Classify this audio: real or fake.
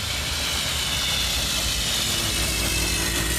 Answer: real